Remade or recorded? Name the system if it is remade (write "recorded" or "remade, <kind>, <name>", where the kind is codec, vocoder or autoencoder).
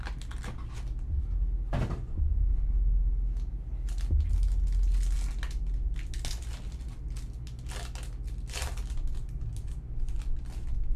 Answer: recorded